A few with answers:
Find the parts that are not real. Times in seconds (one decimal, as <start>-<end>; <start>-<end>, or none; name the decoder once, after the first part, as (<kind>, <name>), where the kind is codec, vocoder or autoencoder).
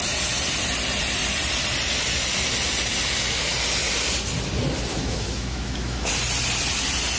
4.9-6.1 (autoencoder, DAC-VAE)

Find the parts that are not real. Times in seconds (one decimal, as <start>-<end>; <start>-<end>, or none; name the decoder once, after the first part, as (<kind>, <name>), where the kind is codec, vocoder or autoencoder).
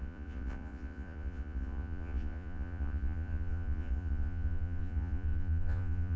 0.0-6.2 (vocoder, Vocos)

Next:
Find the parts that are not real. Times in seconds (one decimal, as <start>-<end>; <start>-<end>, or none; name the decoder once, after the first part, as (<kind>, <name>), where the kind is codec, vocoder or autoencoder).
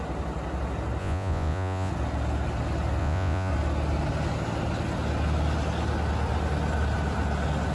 1.0-1.9 (vocoder, Vocos); 3.0-3.5